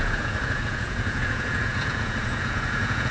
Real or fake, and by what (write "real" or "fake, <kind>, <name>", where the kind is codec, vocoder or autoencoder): fake, vocoder, Vocos